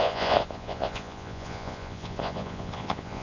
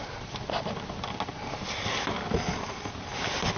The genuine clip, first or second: second